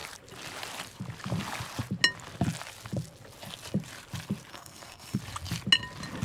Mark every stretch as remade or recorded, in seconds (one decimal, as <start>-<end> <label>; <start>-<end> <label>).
0.0-4.5 recorded; 4.5-5.2 remade; 5.2-6.2 recorded